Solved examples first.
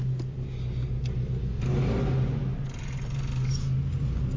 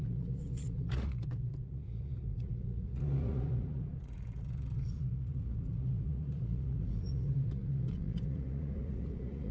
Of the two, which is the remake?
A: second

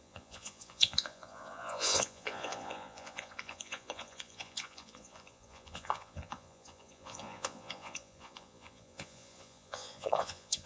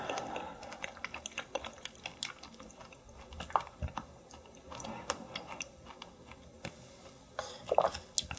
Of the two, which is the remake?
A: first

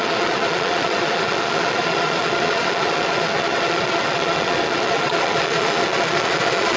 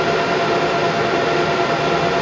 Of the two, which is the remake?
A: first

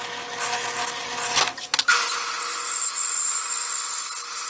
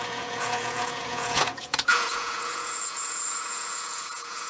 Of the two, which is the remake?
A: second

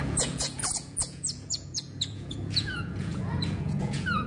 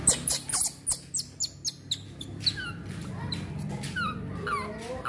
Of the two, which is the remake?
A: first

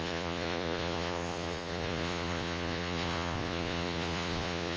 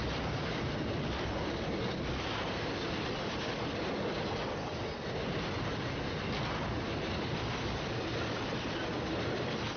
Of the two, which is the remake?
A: first